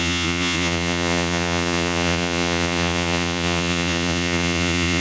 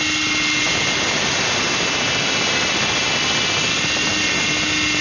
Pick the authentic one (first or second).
second